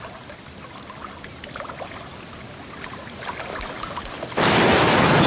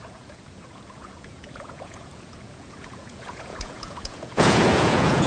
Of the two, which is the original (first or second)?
first